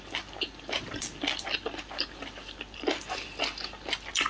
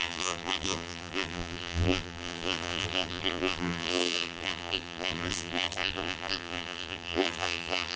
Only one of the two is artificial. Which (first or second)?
second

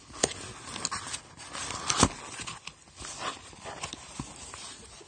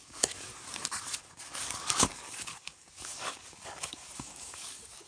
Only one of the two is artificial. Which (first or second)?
second